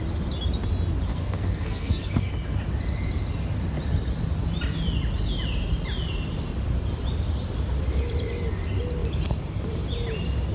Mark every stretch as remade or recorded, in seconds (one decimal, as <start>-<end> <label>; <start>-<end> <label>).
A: 0.0-1.1 recorded; 1.1-2.3 remade; 2.3-10.5 recorded